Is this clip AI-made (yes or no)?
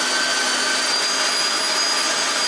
no